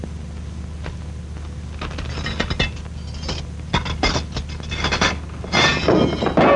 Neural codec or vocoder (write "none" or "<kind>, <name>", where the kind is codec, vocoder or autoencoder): none